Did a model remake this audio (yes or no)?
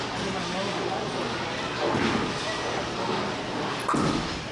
no